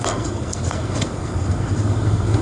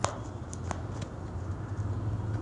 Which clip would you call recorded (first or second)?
second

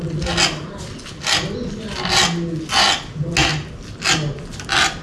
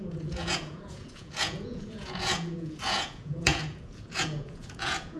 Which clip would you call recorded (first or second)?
first